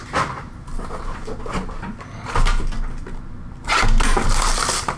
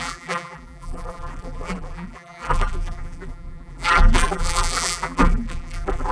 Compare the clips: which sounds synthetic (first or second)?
second